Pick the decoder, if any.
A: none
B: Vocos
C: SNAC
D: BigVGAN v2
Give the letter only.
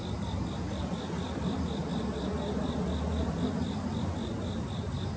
A